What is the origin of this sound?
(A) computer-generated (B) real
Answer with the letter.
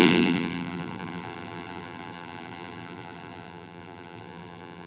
A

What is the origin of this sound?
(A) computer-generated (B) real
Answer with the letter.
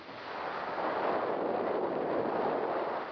B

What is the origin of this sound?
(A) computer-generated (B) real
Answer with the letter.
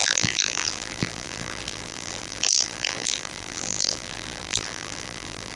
A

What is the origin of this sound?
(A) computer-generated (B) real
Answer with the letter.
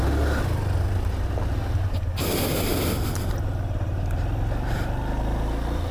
B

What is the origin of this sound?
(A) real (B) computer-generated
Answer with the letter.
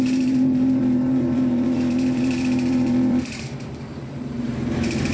B